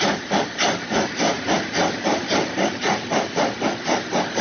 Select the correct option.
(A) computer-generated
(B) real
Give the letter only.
A